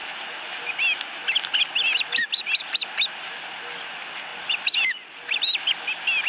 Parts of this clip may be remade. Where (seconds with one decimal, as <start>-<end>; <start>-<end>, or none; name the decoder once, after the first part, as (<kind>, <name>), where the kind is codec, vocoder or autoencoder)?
none